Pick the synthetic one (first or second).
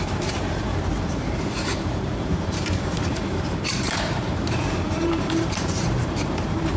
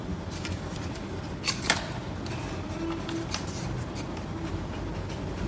first